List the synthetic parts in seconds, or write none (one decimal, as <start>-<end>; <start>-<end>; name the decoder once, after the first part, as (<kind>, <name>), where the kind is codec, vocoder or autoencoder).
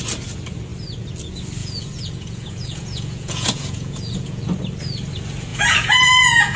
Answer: 1.6-4.4 (vocoder, Vocos); 5.5-6.6